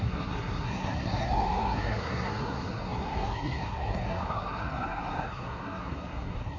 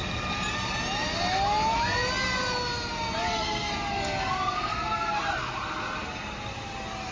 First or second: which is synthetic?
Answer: first